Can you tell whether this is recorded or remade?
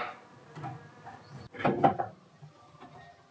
recorded